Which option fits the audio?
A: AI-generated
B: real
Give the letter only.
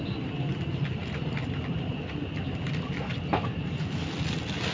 B